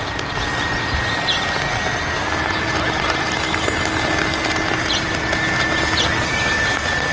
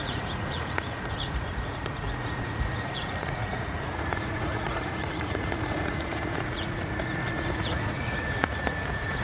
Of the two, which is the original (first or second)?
first